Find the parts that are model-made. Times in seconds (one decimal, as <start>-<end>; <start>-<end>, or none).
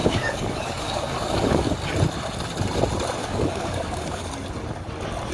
0.0-1.7; 3.2-4.3